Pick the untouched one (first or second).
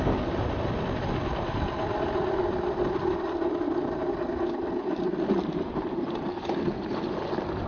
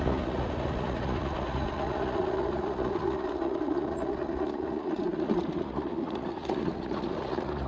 first